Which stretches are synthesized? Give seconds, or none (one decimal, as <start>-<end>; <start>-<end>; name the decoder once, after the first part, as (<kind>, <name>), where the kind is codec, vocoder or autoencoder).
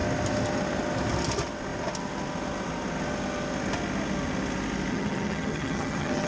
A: 4.9-6.3 (vocoder, HiFi-GAN)